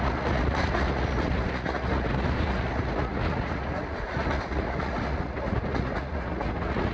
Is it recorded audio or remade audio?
remade